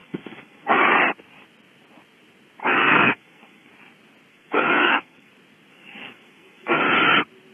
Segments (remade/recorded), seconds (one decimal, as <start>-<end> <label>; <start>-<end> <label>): 0.0-0.8 remade; 0.8-2.6 recorded; 2.6-3.7 remade; 3.7-4.3 recorded; 4.3-5.3 remade; 5.3-5.7 recorded; 5.7-6.8 remade; 6.8-7.5 recorded